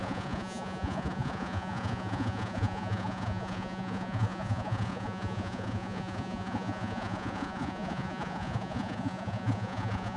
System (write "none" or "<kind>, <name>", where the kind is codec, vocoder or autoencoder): vocoder, Vocos